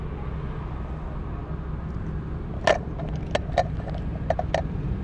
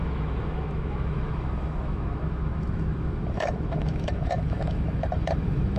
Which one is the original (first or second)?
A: first